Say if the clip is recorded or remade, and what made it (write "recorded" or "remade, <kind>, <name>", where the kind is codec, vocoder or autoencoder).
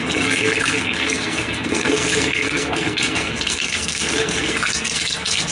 remade, codec, SNAC